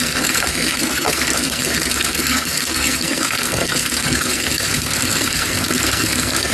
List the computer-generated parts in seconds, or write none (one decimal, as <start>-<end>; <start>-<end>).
0.0-6.5